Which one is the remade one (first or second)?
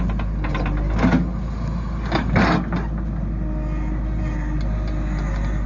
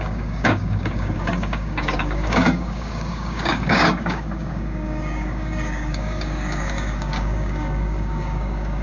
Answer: second